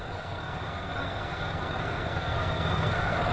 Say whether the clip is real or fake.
fake